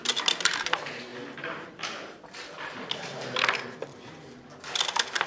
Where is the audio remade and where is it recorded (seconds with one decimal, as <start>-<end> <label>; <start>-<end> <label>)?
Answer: 0.0-1.1 recorded; 1.1-4.2 remade; 4.2-5.3 recorded